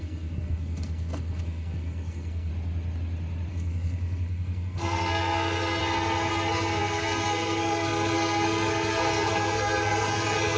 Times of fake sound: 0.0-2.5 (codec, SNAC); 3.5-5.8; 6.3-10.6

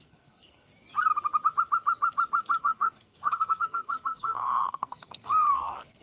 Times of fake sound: 0.0-0.7 (codec, SNAC); 2.6-6.0

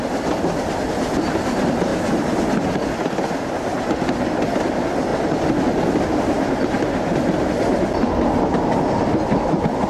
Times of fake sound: none

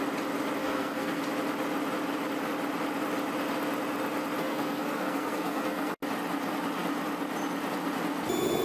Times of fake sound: 0.6-1.2 (codec, SNAC); 4.4-5.9

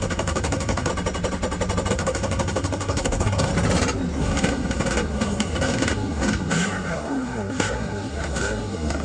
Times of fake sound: 0.0-0.9 (codec, SNAC); 1.9-3.5; 4.2-9.0

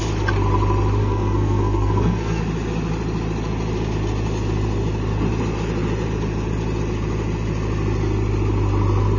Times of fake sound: 1.0-2.4 (codec, SNAC)

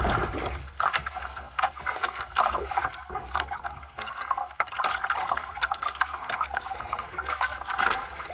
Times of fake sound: 0.6-4.7 (codec, SNAC); 5.2-8.3